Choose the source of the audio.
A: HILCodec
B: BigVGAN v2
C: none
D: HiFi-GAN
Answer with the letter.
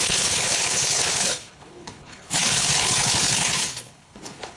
A